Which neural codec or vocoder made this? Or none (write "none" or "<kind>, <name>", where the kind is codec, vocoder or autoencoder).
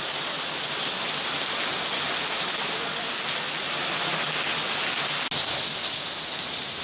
none